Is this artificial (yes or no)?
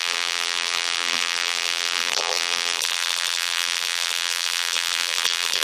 yes